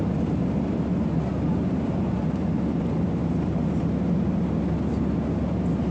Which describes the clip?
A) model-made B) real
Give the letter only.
B